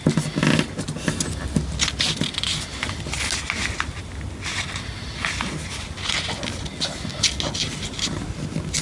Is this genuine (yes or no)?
yes